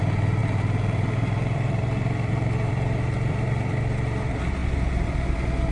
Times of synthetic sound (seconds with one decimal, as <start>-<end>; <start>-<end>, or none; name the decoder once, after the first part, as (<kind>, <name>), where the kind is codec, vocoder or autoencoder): 0.4-3.8 (vocoder, BigVGAN v2); 4.6-5.7